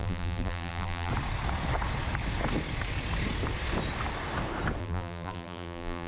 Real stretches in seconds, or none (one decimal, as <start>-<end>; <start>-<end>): 1.1-4.8